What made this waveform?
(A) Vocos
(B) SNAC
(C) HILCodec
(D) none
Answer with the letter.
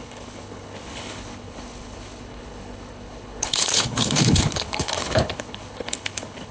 C